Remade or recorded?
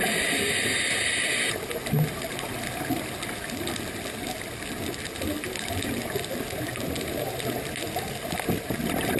recorded